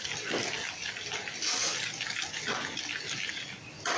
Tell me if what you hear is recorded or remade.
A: recorded